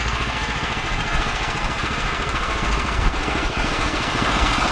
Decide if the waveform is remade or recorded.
remade